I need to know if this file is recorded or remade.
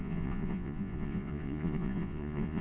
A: remade